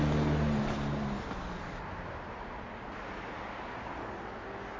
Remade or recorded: recorded